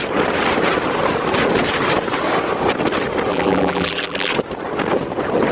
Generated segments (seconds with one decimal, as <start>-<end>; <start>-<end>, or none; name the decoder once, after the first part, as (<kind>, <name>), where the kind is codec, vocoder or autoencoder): 3.3-4.3 (vocoder, BigVGAN v2)